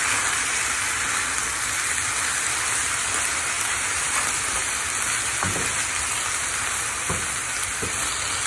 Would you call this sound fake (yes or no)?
no